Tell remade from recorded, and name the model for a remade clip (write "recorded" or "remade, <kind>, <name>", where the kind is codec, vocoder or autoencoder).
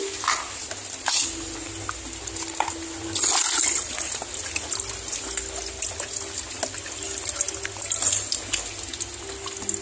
recorded